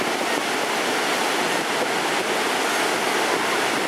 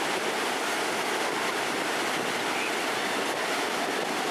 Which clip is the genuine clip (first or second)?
first